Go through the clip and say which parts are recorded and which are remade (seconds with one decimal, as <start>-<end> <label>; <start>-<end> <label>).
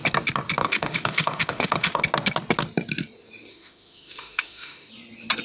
0.0-0.6 recorded; 0.6-2.0 remade; 2.0-3.5 recorded; 3.5-4.9 remade; 4.9-5.4 recorded